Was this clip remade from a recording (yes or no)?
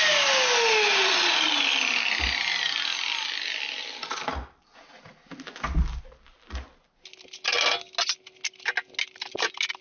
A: no